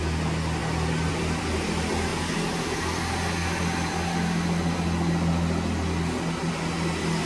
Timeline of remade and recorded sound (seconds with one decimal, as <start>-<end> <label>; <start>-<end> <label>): 0.0-7.3 recorded